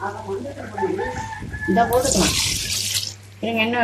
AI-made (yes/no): no